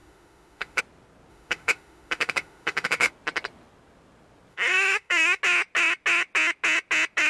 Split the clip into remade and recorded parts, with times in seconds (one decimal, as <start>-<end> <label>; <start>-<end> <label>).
0.0-0.8 remade; 0.8-1.3 recorded; 1.3-3.1 remade; 3.1-4.5 recorded; 4.5-5.4 remade; 5.4-7.3 recorded